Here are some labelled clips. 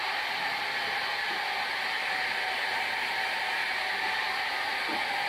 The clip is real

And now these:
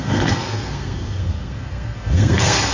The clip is fake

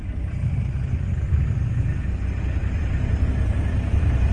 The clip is real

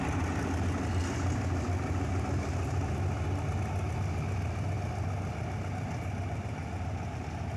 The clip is real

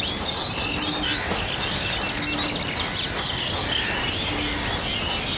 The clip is real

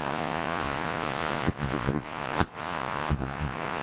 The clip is fake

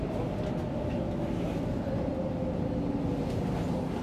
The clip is real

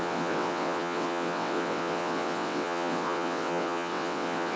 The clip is fake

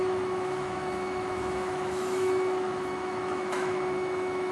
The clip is fake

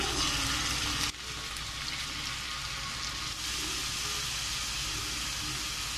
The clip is real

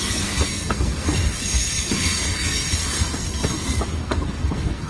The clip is fake